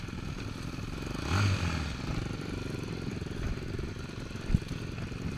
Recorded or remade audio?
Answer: recorded